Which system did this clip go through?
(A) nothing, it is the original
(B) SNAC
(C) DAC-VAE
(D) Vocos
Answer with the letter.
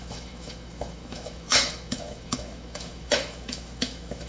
C